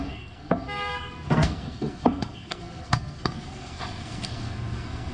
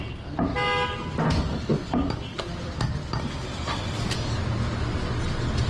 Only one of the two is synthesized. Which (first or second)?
first